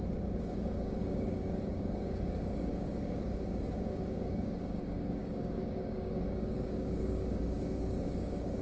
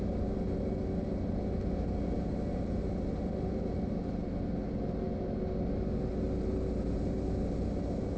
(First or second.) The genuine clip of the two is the second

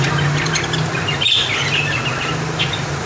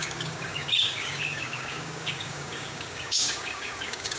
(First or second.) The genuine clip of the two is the first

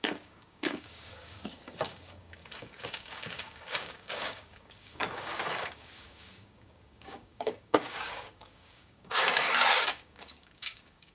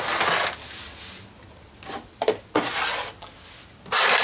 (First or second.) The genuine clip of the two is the second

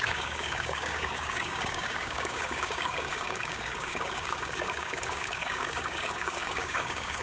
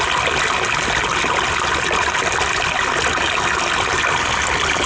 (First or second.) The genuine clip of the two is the second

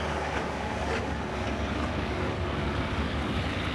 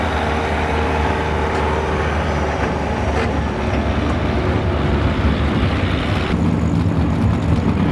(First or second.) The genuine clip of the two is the second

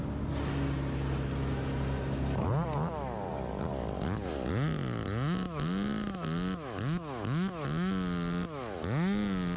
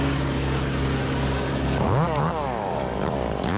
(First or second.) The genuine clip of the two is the first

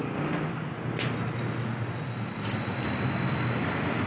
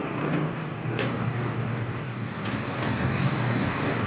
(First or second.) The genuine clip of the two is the first